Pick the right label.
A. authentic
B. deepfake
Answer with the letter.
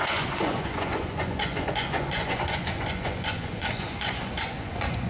B